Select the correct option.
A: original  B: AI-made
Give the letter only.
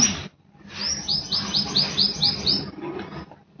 A